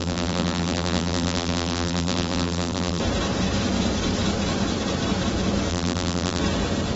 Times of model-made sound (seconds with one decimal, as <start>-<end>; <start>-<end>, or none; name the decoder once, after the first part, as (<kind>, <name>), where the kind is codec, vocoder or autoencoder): 0.0-3.0 (vocoder, BigVGAN v2); 5.7-6.4